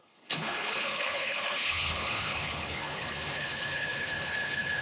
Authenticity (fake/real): fake